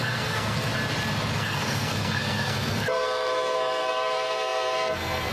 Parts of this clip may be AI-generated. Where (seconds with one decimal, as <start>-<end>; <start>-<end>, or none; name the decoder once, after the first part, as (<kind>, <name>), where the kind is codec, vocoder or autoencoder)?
0.0-0.7 (codec, SNAC); 1.3-5.3